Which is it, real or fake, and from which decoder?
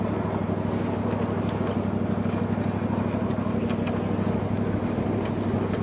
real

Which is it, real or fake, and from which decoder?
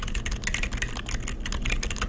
real